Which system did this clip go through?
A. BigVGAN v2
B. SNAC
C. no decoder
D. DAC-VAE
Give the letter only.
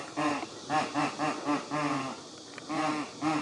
C